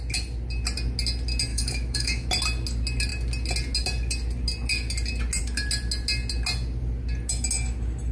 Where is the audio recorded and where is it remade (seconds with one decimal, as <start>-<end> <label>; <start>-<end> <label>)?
0.0-1.5 recorded; 1.5-2.3 remade; 2.3-8.1 recorded

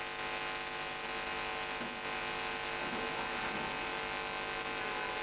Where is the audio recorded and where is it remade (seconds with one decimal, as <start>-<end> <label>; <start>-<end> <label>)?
0.0-5.2 recorded

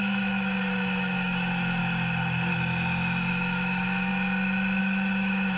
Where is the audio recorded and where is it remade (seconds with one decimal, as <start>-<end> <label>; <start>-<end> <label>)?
0.0-1.8 remade; 1.8-3.3 recorded; 3.3-4.1 remade; 4.1-4.8 recorded; 4.8-5.6 remade

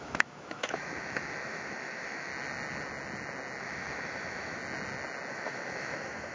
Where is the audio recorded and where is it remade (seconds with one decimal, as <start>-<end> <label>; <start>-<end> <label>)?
0.0-2.3 remade; 2.3-3.6 recorded; 3.6-4.6 remade; 4.6-5.3 recorded; 5.3-6.3 remade

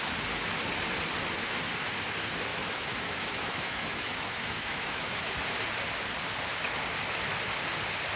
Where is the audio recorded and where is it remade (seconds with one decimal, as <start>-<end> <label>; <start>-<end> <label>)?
0.0-2.5 recorded; 2.5-5.3 remade; 5.3-8.2 recorded

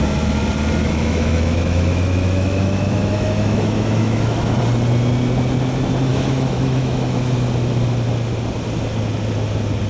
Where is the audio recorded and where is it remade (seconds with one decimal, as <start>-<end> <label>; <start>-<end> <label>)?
0.0-0.8 recorded; 0.8-4.6 remade; 4.6-6.1 recorded; 6.1-7.3 remade; 7.3-9.9 recorded

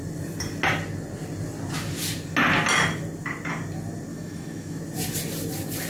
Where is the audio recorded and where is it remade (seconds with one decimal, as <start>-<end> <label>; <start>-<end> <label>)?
0.0-4.1 recorded; 4.1-4.8 remade; 4.8-5.9 recorded